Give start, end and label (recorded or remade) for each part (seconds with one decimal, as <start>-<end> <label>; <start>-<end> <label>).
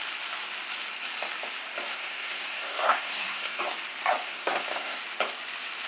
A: 0.0-1.9 recorded; 1.9-3.6 remade; 3.6-4.2 recorded; 4.2-5.0 remade; 5.0-5.9 recorded